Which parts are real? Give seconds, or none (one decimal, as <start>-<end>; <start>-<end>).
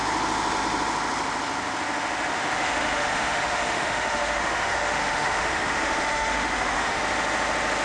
0.0-2.3; 7.0-7.8